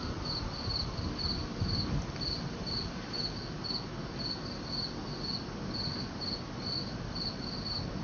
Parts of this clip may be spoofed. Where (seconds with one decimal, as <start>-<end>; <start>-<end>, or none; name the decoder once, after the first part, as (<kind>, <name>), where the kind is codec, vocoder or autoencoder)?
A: none